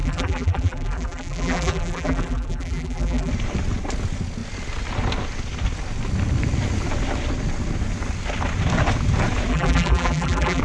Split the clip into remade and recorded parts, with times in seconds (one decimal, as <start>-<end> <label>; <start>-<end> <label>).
0.0-3.3 remade; 3.3-9.5 recorded; 9.5-10.6 remade